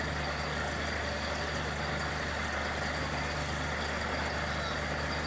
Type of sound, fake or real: real